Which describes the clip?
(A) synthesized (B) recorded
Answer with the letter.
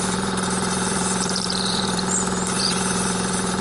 A